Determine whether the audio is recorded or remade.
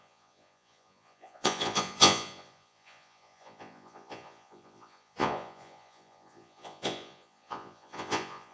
remade